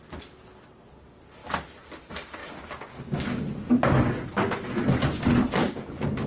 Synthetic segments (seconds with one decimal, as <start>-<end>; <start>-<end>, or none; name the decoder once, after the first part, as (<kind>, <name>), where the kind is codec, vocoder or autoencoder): none

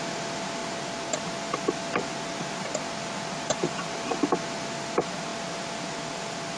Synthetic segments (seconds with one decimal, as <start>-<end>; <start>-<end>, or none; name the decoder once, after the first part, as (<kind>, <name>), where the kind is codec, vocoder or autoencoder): none